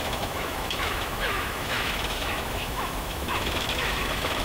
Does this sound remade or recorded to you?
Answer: remade